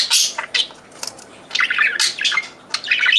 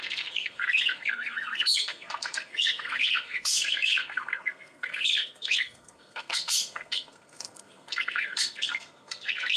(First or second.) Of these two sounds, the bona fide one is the first